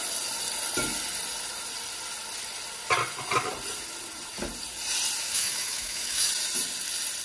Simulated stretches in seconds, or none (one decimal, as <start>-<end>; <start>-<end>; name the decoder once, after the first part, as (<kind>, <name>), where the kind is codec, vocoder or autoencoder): 5.2-6.3 (autoencoder, DAC-VAE)